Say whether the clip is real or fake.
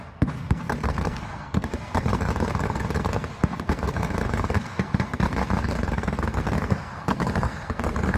fake